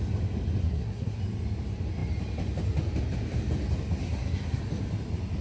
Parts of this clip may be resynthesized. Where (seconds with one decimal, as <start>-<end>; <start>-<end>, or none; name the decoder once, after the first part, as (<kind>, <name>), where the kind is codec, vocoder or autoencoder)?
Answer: 0.6-1.2 (codec, SNAC); 4.0-4.6

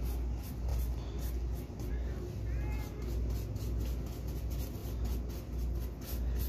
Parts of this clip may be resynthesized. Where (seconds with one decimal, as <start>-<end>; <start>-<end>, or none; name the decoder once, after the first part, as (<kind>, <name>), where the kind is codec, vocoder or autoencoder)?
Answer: none

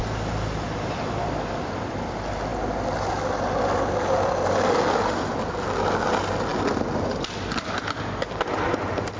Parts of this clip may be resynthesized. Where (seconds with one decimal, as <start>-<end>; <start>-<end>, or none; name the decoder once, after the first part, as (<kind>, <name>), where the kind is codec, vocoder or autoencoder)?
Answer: none

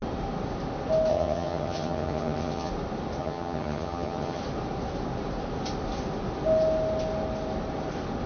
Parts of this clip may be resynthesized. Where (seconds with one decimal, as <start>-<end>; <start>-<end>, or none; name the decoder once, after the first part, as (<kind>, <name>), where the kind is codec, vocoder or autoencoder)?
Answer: 1.1-2.7 (vocoder, HiFi-GAN); 3.2-4.4

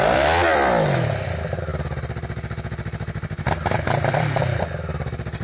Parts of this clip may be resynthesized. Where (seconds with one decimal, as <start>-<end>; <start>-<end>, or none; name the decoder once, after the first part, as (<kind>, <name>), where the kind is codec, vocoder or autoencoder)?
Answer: none

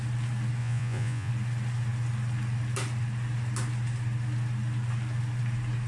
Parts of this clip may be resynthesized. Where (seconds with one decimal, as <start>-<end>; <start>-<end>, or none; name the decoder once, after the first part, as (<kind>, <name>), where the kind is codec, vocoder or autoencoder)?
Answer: 0.6-1.3 (vocoder, Vocos)